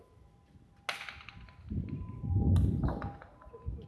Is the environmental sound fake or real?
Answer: real